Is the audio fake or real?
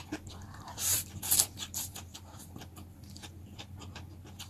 fake